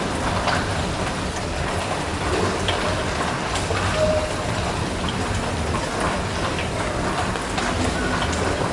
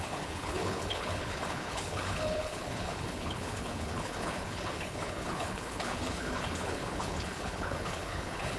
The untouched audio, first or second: first